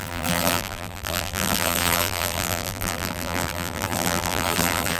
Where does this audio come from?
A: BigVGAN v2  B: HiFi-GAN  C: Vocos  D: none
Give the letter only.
A